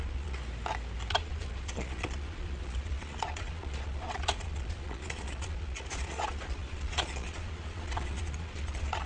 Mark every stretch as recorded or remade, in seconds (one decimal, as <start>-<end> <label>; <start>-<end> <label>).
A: 0.0-0.4 remade; 0.4-1.1 recorded; 1.1-9.1 remade